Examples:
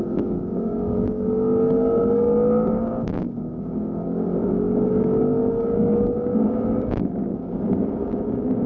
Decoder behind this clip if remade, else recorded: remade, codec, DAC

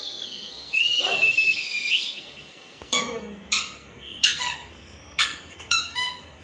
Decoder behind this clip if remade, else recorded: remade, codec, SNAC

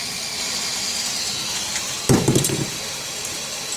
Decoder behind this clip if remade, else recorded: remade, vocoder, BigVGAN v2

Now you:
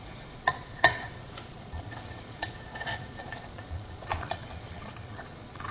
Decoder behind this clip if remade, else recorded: remade, vocoder, Vocos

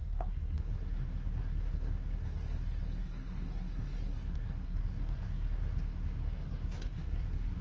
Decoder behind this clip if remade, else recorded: remade, codec, SNAC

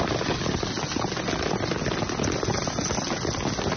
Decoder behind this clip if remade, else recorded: recorded